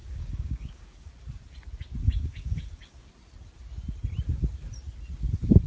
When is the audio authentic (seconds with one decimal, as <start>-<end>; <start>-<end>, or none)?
1.1-2.0; 3.1-5.7